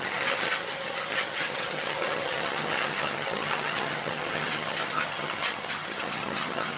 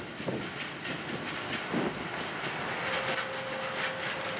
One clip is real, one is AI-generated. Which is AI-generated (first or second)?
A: first